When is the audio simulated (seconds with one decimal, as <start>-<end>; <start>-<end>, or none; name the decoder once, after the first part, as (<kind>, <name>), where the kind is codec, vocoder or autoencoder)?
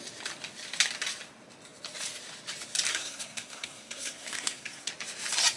2.9-4.9 (codec, SNAC)